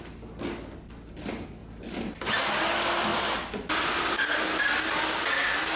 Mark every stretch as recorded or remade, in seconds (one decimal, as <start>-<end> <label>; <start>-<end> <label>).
0.0-5.8 recorded